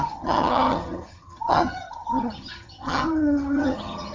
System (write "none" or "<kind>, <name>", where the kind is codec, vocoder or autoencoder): vocoder, HiFi-GAN